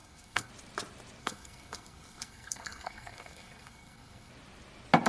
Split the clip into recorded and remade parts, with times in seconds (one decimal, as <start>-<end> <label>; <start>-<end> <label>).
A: 0.0-0.5 remade; 0.5-1.2 recorded; 1.2-4.3 remade; 4.3-5.1 recorded